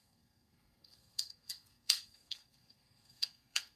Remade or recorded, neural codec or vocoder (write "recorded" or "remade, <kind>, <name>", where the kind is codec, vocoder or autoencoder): remade, codec, SNAC